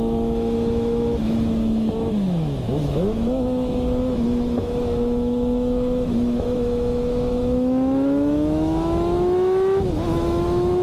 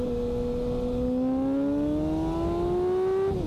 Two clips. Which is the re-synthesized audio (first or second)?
first